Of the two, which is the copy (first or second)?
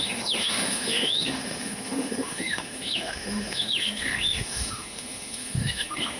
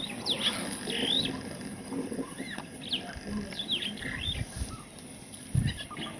first